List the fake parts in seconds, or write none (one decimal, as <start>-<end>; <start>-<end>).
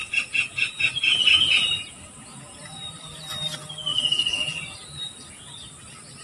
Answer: 0.0-2.9; 3.9-5.4